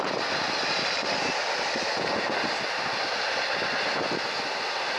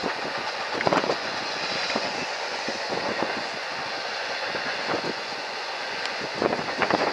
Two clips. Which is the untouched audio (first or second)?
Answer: first